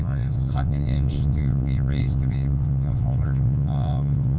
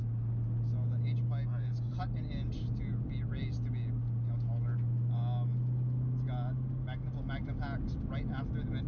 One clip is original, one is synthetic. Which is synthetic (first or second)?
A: first